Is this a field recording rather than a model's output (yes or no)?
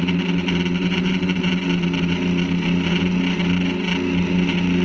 yes